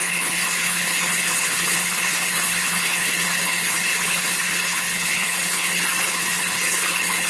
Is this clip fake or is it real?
fake